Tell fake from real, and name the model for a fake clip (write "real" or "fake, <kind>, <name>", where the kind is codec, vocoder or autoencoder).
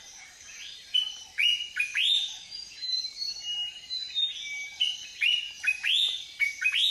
fake, vocoder, BigVGAN v2